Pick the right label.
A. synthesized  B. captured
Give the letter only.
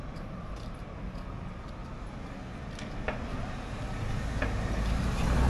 B